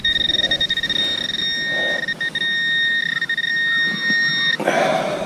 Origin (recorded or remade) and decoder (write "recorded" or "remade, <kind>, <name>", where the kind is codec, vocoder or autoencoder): recorded